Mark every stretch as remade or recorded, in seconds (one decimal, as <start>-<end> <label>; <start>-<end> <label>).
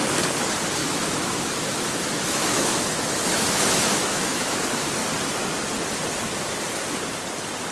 0.0-0.8 recorded; 0.8-4.6 remade; 4.6-7.7 recorded